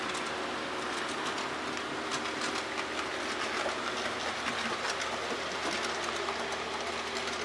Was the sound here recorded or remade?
recorded